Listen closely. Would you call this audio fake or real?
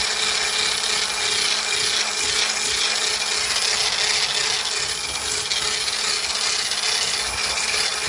real